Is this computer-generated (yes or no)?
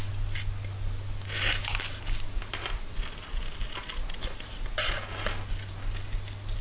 no